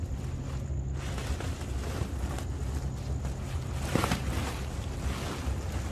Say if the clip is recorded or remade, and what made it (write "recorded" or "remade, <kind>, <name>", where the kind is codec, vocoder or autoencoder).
recorded